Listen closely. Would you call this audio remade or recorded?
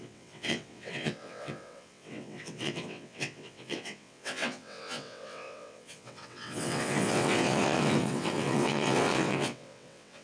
remade